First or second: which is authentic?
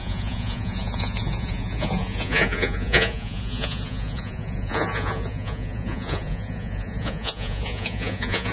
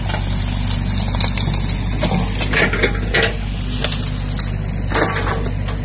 second